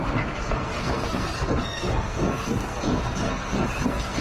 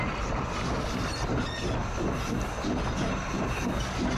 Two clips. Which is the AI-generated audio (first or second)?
first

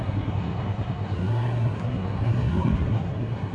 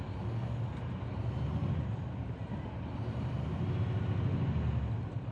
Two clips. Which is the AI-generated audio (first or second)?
first